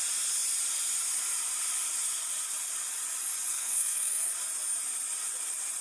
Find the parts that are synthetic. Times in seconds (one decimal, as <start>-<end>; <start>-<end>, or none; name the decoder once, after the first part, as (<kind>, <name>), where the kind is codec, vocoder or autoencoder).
3.5-4.3 (codec, SNAC)